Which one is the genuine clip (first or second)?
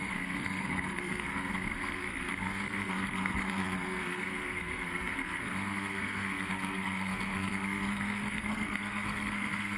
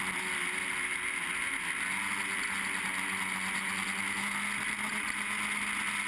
second